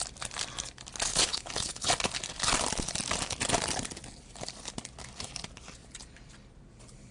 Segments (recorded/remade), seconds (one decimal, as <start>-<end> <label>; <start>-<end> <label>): 0.0-1.1 recorded; 1.1-1.9 remade; 1.9-7.1 recorded